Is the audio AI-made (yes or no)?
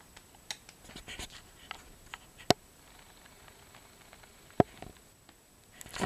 no